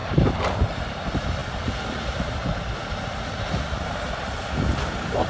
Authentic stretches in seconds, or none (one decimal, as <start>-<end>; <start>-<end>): none